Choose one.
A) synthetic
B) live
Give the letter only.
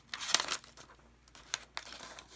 B